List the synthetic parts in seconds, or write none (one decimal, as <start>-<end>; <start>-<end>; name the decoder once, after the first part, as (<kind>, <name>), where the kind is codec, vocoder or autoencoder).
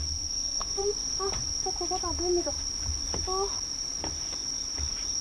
0.0-0.8 (codec, SNAC)